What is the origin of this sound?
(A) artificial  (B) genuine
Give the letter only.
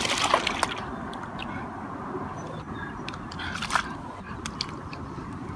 B